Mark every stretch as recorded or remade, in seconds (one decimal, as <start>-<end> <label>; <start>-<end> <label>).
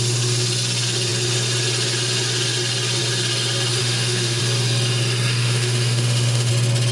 0.0-3.8 recorded; 3.8-4.4 remade; 4.4-5.3 recorded; 5.3-6.5 remade; 6.5-6.9 recorded